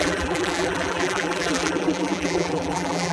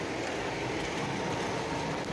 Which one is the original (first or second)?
second